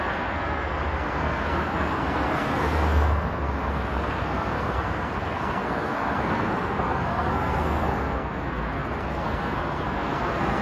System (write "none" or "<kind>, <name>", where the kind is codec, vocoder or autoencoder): codec, SNAC